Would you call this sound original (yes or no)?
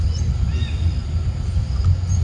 yes